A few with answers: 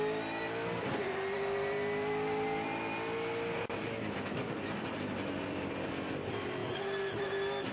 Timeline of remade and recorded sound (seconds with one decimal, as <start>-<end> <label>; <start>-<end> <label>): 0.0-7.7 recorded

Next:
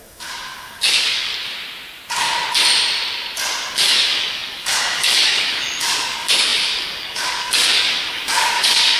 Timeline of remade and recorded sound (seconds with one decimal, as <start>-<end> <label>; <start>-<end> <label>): 0.0-1.3 remade; 1.3-3.7 recorded; 3.7-9.0 remade

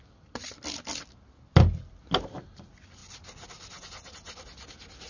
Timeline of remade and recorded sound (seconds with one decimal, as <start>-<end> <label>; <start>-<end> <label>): 0.0-5.1 recorded

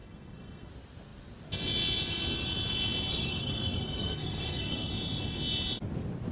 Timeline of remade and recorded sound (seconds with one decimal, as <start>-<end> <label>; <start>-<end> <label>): 0.0-0.7 remade; 0.7-3.1 recorded; 3.1-4.9 remade; 4.9-6.3 recorded